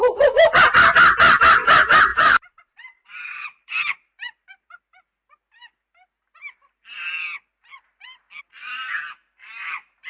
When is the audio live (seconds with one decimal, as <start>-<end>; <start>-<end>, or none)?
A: 0.0-2.1; 4.8-10.1